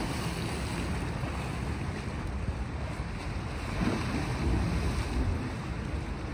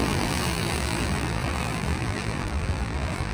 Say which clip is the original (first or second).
first